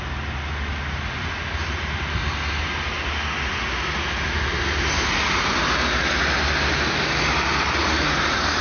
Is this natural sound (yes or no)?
yes